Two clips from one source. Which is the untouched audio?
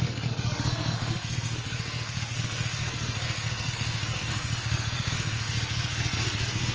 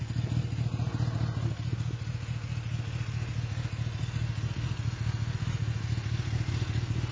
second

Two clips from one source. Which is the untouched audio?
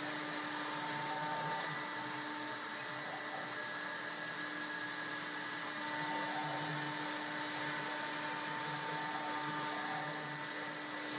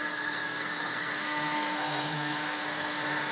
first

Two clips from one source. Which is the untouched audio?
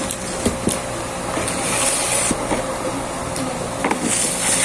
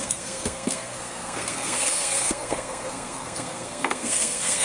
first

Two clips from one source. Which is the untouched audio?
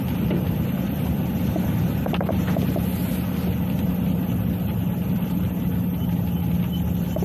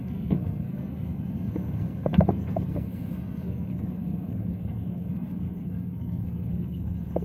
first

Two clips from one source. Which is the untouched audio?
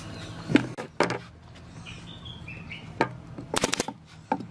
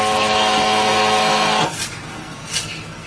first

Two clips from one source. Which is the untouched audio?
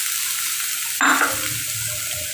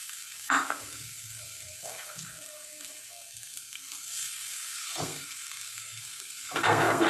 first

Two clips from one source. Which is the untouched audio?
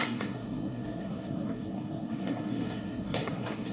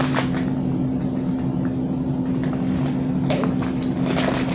second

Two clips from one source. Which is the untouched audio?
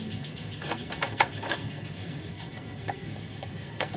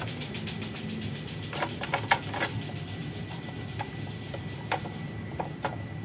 second